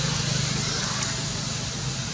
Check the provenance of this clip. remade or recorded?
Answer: recorded